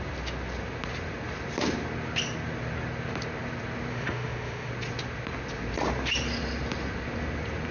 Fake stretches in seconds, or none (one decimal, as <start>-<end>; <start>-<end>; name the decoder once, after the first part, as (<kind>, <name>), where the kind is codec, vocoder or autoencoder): 3.9-4.7 (autoencoder, DAC-VAE)